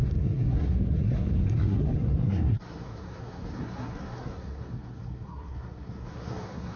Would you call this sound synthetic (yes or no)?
yes